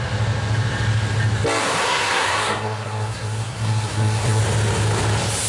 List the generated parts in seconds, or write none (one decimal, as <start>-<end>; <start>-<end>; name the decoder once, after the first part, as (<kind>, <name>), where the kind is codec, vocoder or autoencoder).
1.6-4.4 (codec, SNAC)